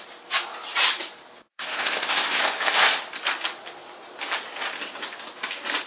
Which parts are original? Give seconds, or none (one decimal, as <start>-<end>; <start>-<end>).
0.0-1.5; 2.4-5.9